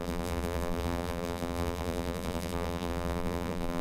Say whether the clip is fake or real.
fake